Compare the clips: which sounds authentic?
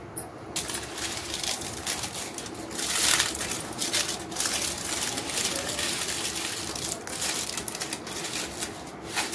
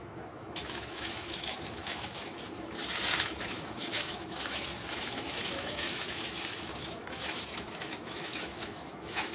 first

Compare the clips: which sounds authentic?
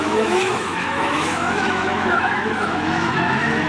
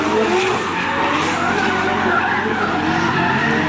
second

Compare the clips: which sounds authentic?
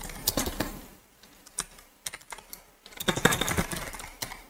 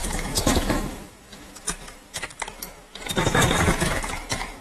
first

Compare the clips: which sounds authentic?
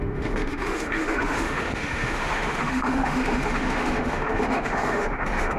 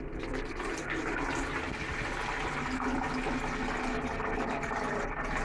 second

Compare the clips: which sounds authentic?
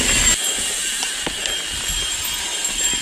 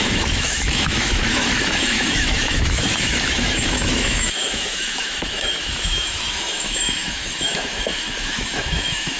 first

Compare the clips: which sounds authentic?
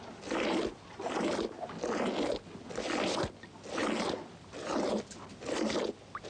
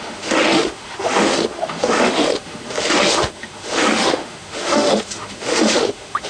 first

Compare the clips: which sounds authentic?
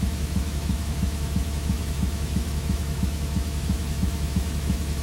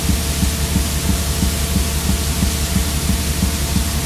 second